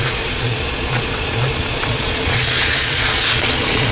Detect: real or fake fake